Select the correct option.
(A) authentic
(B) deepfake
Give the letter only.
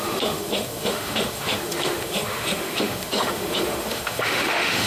B